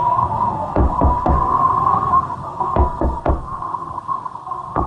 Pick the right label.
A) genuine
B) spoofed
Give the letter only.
B